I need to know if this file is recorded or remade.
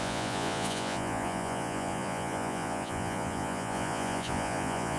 remade